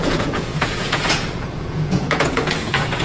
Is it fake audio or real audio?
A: fake